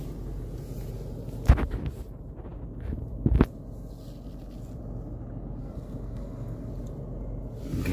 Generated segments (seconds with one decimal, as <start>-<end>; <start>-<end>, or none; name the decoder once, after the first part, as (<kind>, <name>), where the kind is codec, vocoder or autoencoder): 5.6-6.7 (codec, SNAC)